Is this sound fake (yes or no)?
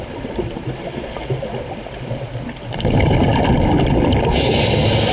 no